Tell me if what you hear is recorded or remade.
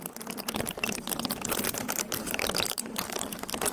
remade